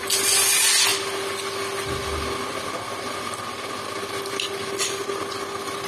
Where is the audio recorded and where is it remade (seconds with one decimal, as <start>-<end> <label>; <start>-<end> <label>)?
0.0-5.9 recorded